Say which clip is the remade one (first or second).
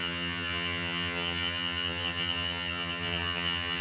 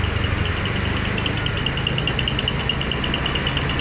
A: first